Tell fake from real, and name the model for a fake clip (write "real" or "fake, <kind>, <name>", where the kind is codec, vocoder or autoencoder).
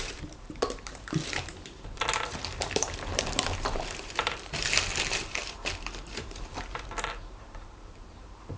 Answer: fake, vocoder, BigVGAN v2